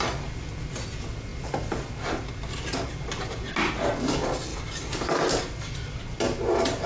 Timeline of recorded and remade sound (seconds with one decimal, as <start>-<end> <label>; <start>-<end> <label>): 0.0-6.9 recorded